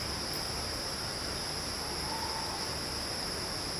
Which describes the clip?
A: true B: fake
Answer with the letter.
A